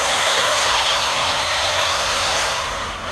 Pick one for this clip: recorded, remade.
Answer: remade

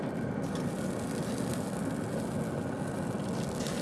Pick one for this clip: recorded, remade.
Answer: recorded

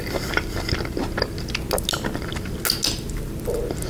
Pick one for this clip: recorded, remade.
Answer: recorded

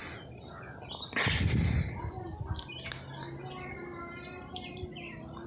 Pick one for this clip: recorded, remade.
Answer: recorded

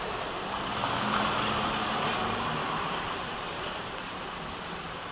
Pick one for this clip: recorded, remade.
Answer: remade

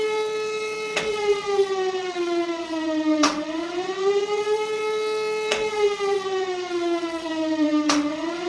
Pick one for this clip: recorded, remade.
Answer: remade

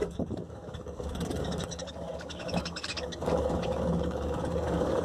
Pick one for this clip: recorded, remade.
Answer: remade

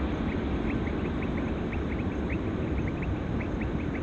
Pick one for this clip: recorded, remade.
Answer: recorded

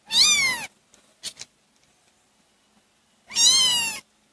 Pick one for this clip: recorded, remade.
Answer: recorded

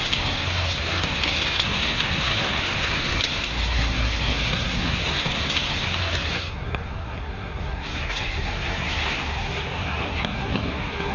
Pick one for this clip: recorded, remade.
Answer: remade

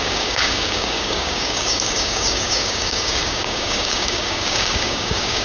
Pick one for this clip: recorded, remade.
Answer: remade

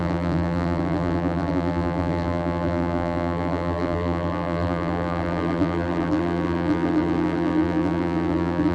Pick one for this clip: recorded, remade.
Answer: remade